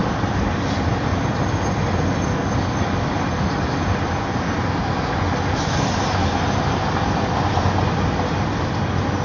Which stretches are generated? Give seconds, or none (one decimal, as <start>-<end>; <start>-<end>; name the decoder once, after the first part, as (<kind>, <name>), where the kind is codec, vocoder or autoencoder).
none